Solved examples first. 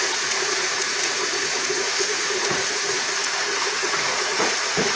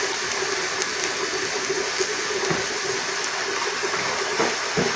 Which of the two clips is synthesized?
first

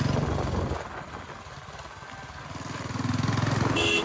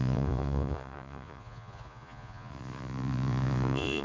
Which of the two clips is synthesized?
second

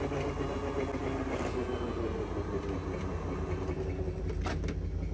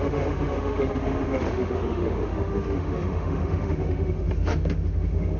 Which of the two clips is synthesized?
second